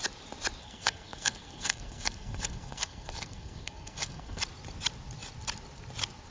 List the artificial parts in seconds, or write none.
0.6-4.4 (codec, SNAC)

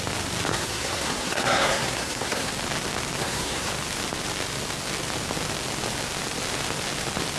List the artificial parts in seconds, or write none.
0.5-2.5 (codec, SNAC); 3.2-3.7

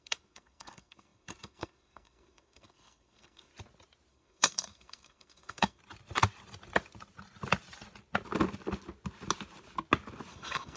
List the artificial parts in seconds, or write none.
0.0-3.5 (codec, SNAC); 4.1-5.8; 10.3-10.8

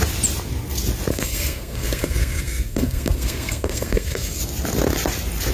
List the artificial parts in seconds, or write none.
1.1-4.4 (codec, SNAC)

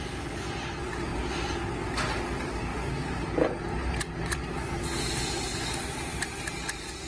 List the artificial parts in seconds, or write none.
none

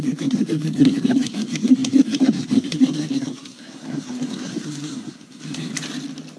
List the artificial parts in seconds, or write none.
0.0-5.7 (codec, SNAC)

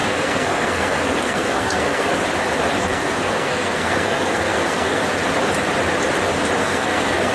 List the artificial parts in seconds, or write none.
0.0-2.2 (codec, SNAC); 2.8-5.0; 6.6-7.3

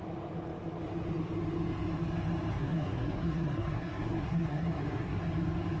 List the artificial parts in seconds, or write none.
2.5-5.2 (codec, SNAC)